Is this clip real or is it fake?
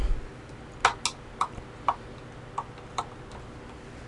real